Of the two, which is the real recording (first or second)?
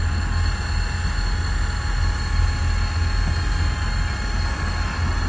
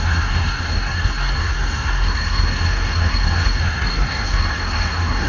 first